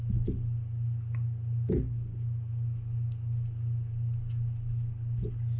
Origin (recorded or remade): recorded